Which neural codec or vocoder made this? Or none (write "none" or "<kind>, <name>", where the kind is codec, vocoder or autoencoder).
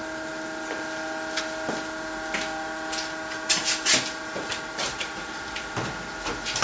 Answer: none